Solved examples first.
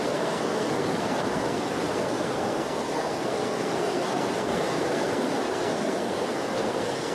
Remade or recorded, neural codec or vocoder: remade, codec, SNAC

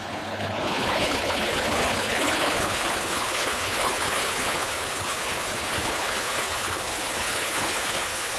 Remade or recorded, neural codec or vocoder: remade, codec, HILCodec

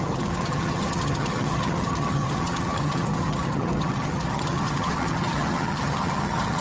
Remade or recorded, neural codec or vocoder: remade, vocoder, HiFi-GAN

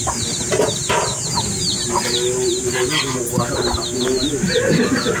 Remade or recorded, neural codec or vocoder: recorded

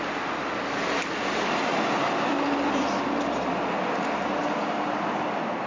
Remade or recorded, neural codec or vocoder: recorded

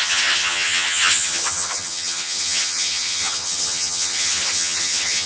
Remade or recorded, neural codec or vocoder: remade, vocoder, HiFi-GAN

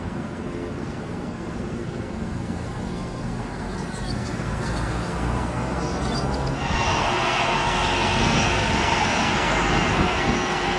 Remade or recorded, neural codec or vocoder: remade, codec, SNAC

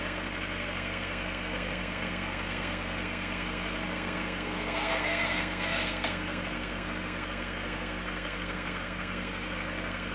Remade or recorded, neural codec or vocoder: remade, codec, SNAC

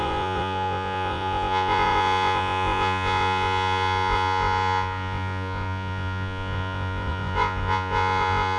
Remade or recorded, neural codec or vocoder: remade, vocoder, Vocos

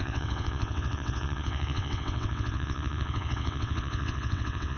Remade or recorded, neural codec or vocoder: remade, vocoder, WaveNeXt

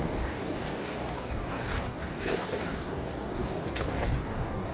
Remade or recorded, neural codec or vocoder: remade, codec, DAC